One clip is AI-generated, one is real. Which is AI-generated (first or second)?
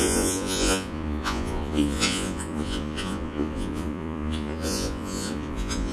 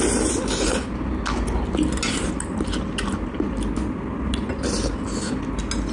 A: first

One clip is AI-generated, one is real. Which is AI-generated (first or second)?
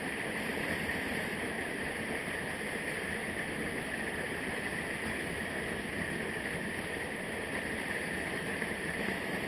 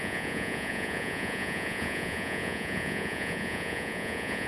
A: second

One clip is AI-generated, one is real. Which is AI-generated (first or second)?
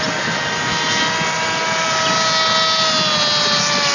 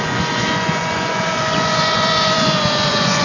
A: second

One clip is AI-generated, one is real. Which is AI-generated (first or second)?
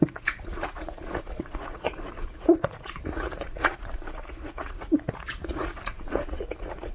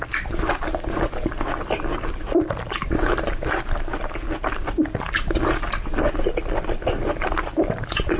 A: first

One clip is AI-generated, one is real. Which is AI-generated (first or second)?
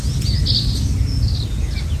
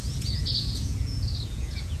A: second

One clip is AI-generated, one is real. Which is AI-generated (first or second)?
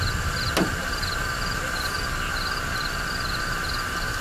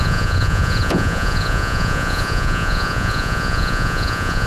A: second